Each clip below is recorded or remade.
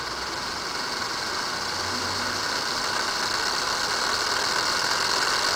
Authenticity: recorded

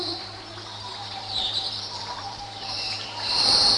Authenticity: remade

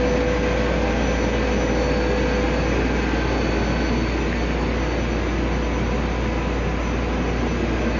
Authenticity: recorded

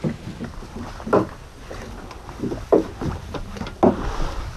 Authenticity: recorded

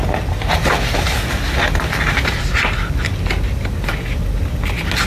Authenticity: recorded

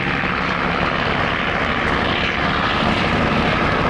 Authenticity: recorded